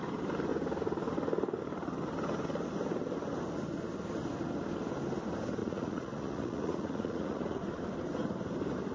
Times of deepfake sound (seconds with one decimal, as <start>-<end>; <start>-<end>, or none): 5.6-7.6